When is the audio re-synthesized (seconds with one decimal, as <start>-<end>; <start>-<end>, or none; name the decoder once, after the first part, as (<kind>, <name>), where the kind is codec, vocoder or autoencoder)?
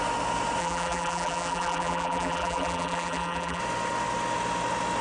0.6-3.6 (vocoder, BigVGAN v2)